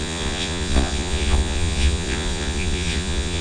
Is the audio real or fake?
fake